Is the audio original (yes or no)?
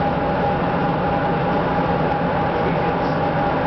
yes